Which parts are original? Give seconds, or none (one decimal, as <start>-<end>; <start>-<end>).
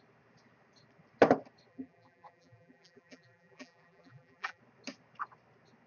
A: 0.0-1.7; 4.6-5.9